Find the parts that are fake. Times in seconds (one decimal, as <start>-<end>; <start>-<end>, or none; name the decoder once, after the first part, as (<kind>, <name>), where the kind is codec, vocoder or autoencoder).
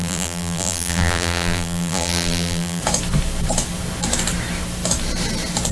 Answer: 0.0-2.8 (vocoder, BigVGAN v2)